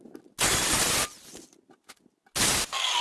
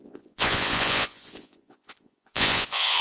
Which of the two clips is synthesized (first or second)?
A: second